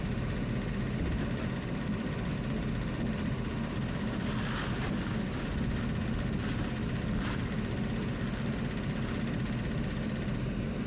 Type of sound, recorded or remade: recorded